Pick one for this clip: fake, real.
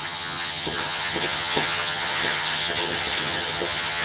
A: fake